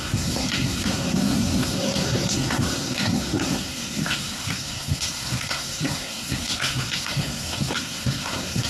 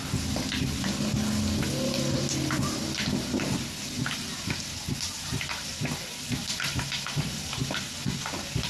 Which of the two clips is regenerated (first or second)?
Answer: first